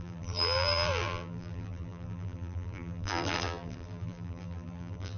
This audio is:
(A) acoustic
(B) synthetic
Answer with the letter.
B